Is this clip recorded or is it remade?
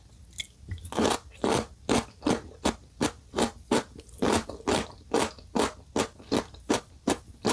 recorded